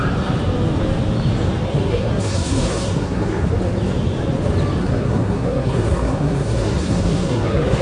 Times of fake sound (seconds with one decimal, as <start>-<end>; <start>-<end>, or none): 1.7-3.5; 4.8-7.8